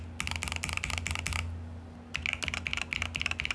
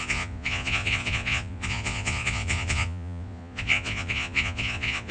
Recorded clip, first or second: first